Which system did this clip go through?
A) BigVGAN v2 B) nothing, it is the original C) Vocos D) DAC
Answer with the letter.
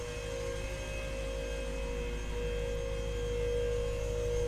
B